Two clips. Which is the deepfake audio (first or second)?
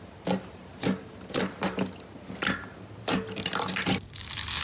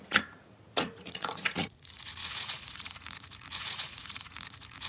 second